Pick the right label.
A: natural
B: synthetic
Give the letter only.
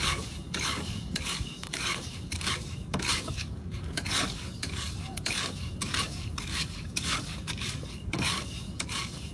B